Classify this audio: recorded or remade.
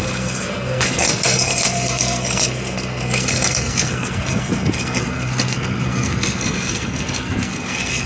remade